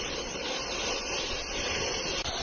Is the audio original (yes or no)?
yes